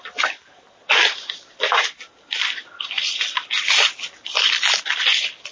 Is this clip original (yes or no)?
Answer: yes